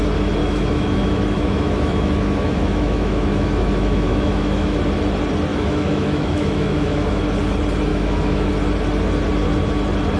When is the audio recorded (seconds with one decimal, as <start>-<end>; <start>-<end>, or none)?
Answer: 0.0-0.4; 4.8-5.5; 7.2-7.9; 8.5-10.2